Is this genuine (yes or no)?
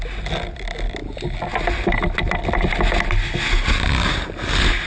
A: yes